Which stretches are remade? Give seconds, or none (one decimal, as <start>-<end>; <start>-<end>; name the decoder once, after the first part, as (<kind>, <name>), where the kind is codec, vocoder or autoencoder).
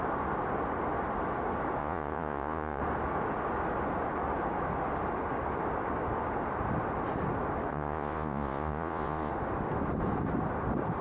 1.8-2.8 (vocoder, Vocos); 7.7-9.3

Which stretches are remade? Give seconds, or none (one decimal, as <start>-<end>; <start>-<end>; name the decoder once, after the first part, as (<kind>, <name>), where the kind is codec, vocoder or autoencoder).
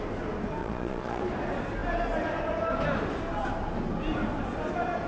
0.6-1.2 (vocoder, Vocos)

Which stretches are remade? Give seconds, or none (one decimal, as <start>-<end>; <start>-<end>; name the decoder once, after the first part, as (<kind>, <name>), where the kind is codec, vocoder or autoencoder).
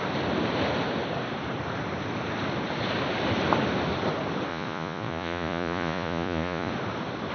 4.5-6.7 (vocoder, Vocos)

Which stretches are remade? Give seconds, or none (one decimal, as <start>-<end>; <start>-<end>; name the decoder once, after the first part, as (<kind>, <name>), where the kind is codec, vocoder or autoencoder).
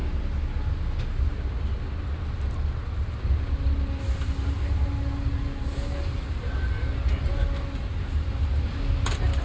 none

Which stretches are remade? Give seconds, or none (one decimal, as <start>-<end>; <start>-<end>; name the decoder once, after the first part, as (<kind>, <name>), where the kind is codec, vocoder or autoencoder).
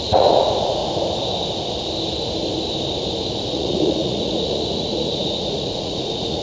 0.0-0.8 (vocoder, Vocos); 3.4-6.4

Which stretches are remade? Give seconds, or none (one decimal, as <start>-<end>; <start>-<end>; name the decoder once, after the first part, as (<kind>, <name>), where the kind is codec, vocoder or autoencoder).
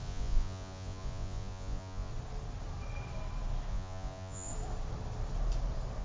0.0-2.1 (vocoder, Vocos); 3.7-4.5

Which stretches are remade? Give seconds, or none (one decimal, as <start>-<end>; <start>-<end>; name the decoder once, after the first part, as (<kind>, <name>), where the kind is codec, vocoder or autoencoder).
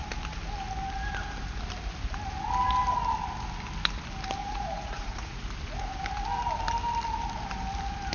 4.4-5.4 (vocoder, Vocos)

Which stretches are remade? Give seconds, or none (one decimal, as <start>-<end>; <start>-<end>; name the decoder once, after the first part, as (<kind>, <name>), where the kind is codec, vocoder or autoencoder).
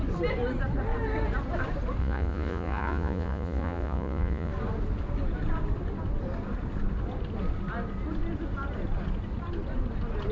2.0-4.5 (vocoder, Vocos)